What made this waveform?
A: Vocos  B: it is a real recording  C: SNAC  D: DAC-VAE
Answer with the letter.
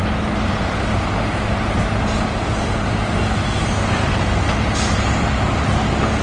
B